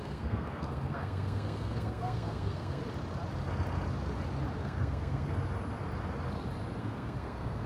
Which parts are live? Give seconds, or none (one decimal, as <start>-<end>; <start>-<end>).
2.8-4.6; 5.3-6.8